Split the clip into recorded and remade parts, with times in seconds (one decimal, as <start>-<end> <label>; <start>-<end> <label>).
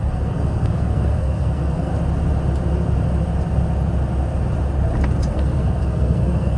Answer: 0.0-1.9 remade; 1.9-5.3 recorded; 5.3-6.6 remade